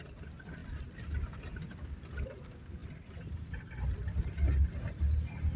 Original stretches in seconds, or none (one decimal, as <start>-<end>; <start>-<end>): 0.0-5.6